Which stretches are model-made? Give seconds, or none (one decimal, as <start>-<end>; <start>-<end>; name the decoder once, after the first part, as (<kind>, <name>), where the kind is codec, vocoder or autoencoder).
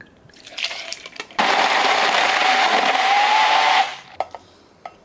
0.0-3.9 (vocoder, BigVGAN v2)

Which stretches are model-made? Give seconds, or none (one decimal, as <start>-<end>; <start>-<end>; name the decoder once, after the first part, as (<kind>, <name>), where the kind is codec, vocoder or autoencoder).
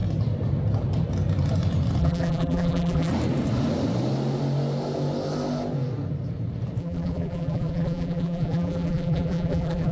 2.0-3.1 (vocoder, BigVGAN v2); 6.8-9.9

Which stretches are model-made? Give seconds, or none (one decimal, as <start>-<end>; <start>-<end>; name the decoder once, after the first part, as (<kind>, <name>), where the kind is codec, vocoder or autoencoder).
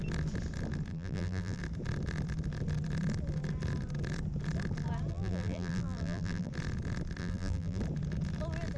0.9-1.6 (vocoder, BigVGAN v2); 5.1-6.5; 7.2-7.8